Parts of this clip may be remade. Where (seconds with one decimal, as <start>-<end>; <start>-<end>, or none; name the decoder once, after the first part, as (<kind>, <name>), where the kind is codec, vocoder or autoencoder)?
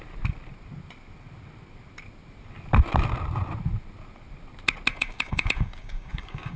4.9-6.6 (codec, DAC)